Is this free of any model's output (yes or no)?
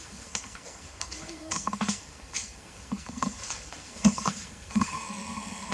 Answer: no